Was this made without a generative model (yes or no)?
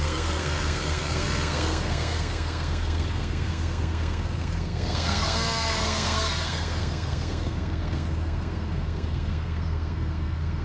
no